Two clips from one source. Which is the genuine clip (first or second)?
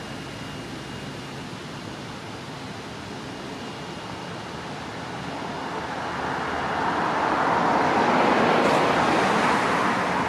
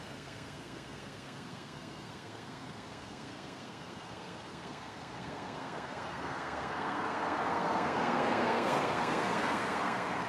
first